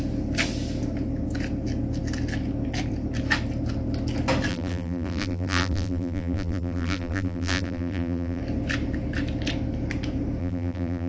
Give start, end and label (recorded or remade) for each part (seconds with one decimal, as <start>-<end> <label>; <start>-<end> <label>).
0.0-4.5 recorded; 4.5-8.4 remade; 8.4-10.4 recorded; 10.4-11.1 remade

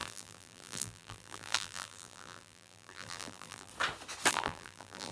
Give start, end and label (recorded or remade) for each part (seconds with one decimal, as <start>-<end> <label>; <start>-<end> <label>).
0.0-3.7 remade; 3.7-4.3 recorded; 4.3-5.1 remade

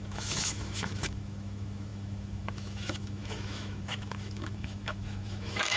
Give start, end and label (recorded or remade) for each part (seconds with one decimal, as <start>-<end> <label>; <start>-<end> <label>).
0.0-5.8 remade

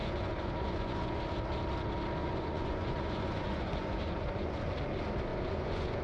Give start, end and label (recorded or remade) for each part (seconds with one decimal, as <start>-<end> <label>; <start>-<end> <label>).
0.0-1.2 remade; 1.2-2.2 recorded; 2.2-4.7 remade; 4.7-5.3 recorded; 5.3-6.0 remade